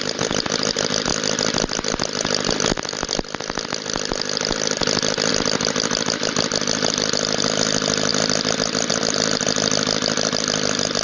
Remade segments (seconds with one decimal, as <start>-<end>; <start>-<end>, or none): none